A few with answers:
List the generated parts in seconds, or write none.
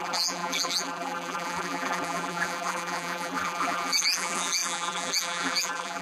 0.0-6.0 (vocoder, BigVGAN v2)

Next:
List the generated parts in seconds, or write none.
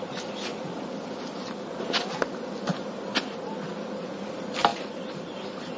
2.7-3.2 (vocoder, BigVGAN v2); 4.7-5.8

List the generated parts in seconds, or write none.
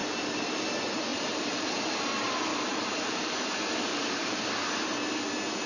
0.0-0.6 (vocoder, BigVGAN v2); 1.1-2.0; 2.5-3.3; 3.9-4.5